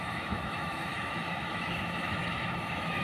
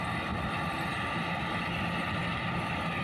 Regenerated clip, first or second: first